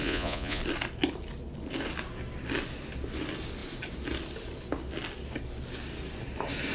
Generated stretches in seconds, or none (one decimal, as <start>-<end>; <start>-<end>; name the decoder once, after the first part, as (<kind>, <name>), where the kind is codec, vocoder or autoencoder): 0.0-0.6 (vocoder, Vocos)